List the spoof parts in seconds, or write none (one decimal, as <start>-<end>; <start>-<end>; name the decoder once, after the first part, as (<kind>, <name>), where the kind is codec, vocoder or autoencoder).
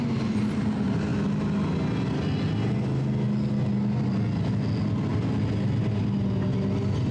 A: none